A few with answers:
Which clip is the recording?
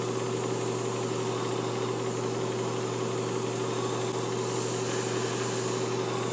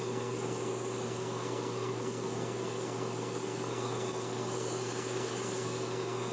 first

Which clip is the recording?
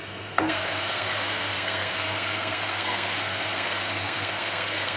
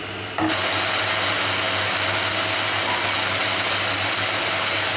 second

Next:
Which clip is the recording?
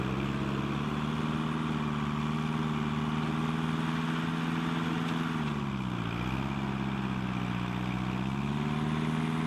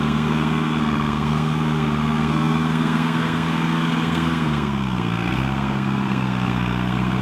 first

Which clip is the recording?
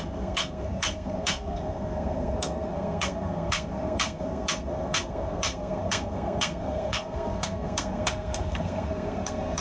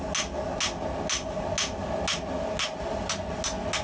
second